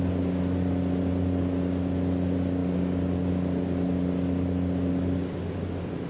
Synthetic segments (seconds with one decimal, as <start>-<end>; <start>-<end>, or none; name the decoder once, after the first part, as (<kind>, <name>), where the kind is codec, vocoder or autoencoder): none